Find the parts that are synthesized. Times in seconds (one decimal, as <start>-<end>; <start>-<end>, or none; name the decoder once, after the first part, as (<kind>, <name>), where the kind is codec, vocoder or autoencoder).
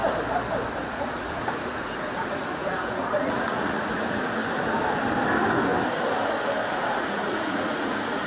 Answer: 0.9-4.4 (vocoder, Vocos); 6.7-8.3